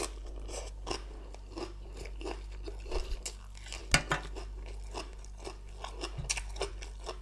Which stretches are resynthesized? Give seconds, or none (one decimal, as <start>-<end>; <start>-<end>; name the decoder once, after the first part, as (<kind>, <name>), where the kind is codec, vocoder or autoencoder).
none